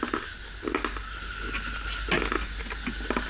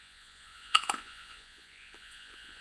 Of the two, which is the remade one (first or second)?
second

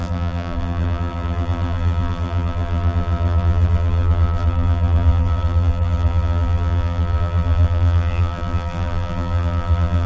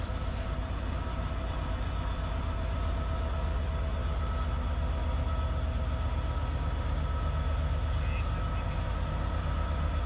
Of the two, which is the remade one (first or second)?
first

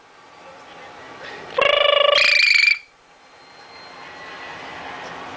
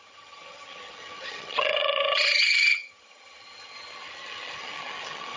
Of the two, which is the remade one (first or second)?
second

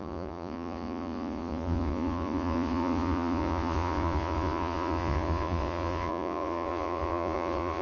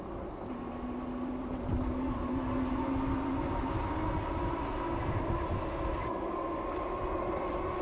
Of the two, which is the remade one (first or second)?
first